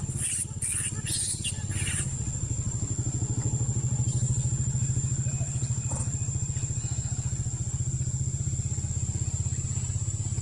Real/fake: real